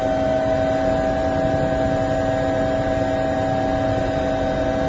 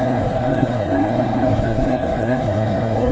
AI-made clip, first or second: second